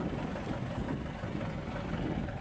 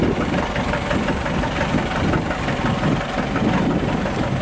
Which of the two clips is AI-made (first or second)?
first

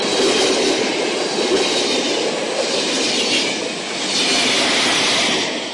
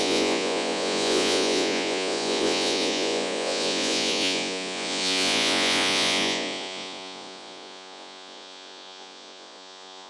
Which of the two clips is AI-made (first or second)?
second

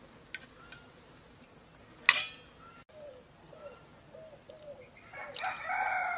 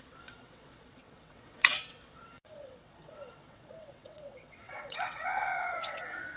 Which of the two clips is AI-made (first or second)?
second